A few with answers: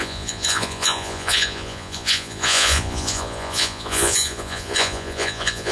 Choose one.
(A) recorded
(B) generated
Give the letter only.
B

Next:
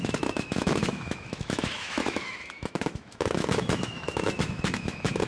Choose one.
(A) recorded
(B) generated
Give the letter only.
B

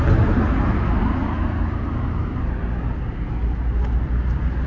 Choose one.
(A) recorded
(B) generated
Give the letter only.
A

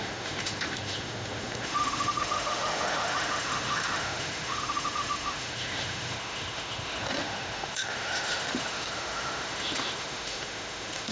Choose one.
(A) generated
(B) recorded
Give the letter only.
A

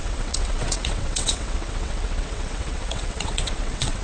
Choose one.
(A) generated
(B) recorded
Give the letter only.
A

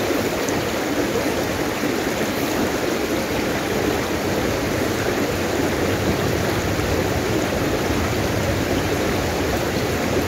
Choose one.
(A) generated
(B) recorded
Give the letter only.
B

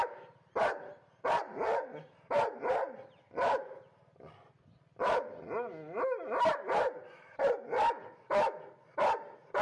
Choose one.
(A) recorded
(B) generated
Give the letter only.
A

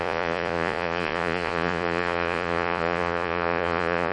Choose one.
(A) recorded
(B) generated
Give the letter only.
B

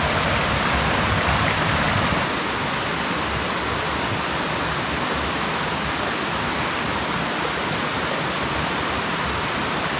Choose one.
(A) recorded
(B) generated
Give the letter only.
A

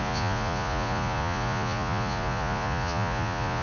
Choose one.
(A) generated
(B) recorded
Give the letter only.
A